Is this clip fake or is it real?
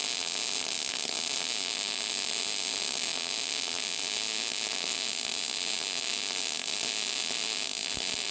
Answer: real